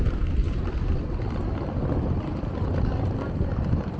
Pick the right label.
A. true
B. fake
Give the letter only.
A